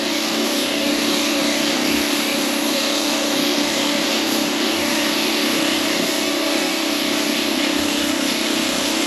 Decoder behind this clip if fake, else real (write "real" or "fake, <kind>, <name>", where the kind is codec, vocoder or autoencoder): fake, codec, DAC